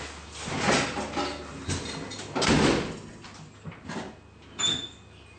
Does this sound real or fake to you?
real